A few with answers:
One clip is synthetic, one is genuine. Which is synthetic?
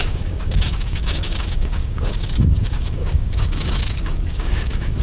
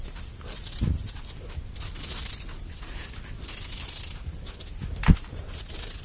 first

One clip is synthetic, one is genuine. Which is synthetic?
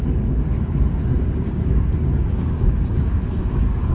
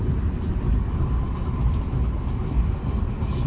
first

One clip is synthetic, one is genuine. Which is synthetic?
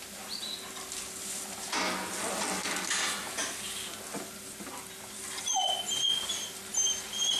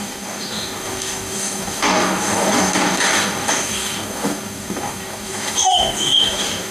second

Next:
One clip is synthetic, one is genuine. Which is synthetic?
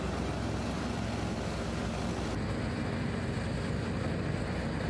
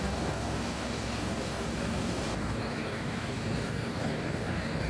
second